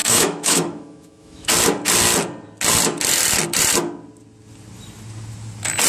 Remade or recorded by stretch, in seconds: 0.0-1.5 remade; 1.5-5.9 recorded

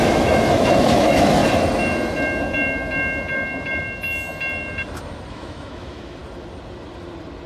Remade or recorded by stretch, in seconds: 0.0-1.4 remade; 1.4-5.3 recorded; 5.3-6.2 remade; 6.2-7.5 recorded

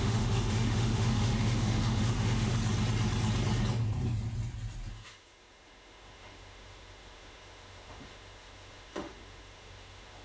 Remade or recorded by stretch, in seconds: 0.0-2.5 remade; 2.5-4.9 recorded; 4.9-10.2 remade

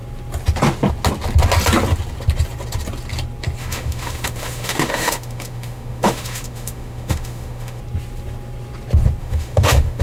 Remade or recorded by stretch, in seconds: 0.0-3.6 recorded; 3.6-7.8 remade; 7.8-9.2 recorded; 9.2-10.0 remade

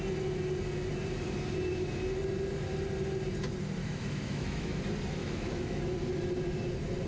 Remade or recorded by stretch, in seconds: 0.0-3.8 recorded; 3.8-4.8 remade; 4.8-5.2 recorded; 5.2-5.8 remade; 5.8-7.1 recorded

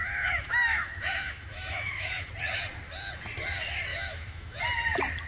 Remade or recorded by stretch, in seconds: 0.0-2.3 remade; 2.3-3.9 recorded; 3.9-4.6 remade; 4.6-5.3 recorded

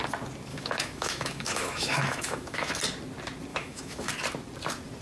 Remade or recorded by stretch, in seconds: 0.0-0.5 recorded; 0.5-2.8 remade; 2.8-3.5 recorded; 3.5-4.1 remade; 4.1-5.0 recorded

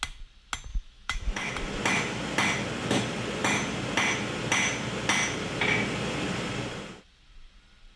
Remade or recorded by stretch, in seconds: 0.0-0.7 recorded; 0.7-1.5 remade; 1.5-8.0 recorded